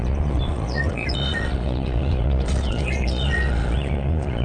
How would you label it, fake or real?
fake